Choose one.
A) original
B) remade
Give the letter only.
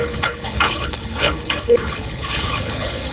B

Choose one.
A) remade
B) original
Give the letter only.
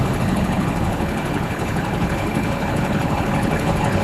A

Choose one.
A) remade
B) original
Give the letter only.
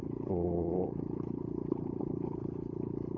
A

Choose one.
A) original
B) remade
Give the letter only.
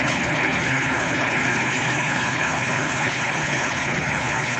B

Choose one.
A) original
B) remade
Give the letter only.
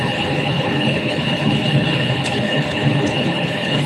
B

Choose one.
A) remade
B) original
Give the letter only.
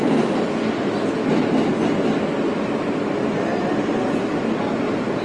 B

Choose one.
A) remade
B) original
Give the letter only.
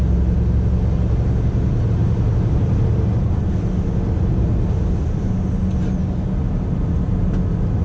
B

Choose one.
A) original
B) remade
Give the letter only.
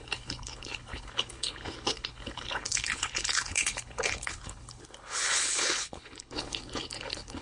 B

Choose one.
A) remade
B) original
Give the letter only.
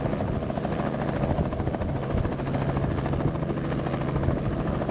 B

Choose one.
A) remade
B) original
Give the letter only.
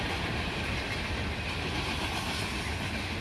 B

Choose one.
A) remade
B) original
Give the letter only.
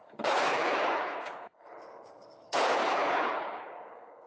A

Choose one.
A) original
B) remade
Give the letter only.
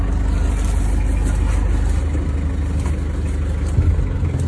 A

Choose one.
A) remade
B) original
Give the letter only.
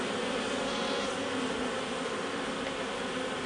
B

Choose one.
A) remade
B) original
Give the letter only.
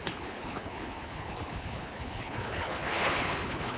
A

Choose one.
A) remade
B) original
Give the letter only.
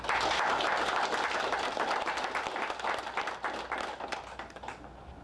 B